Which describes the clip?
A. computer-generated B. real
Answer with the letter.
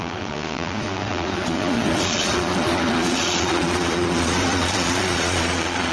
A